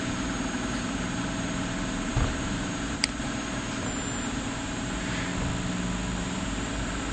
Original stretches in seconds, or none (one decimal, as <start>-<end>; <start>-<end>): 5.3-6.2